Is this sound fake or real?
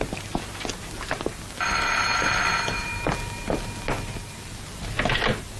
real